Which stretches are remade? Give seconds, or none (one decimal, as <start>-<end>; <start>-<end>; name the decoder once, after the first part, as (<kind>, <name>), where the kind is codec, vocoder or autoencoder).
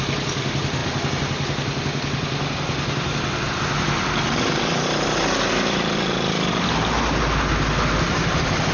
none